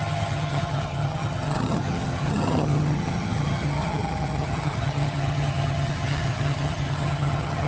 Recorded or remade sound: remade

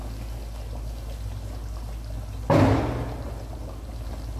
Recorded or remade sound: recorded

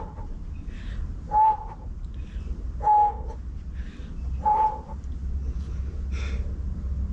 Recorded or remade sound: recorded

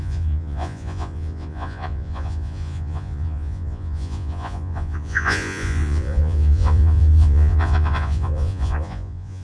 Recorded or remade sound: remade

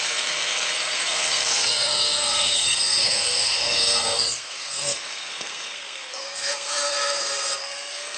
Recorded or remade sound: remade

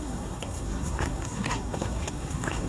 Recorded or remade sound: remade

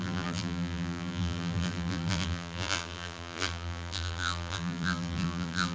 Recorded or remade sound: remade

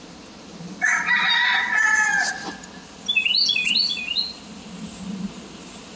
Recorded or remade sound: recorded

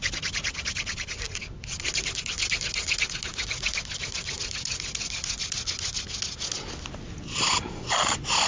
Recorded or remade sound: recorded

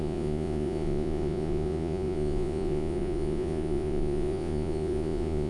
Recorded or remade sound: remade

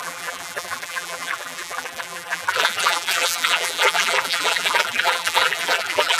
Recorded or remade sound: remade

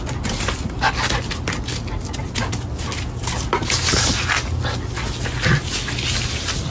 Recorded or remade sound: recorded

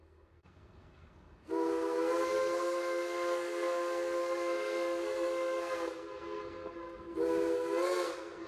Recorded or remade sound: remade